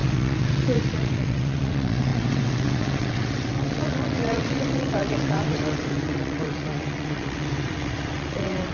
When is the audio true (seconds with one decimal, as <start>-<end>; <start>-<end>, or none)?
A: none